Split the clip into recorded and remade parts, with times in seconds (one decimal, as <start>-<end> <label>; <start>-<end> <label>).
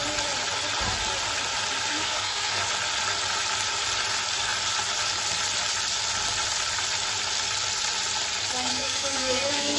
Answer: 0.0-1.9 recorded; 1.9-2.6 remade; 2.6-8.7 recorded; 8.7-9.8 remade